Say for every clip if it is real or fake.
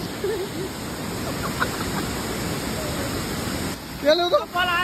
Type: real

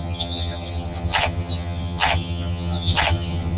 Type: fake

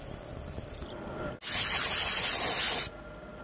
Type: real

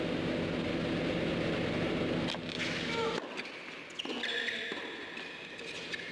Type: real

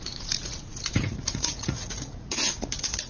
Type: fake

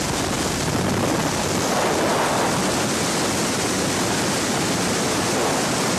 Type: real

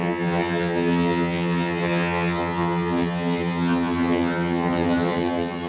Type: fake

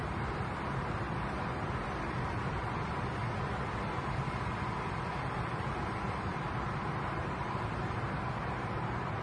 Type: fake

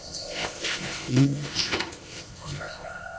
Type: fake